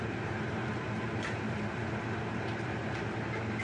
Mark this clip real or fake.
fake